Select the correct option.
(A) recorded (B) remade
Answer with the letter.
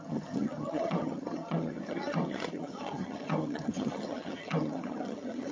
B